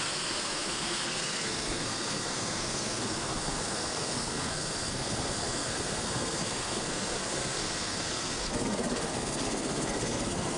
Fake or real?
fake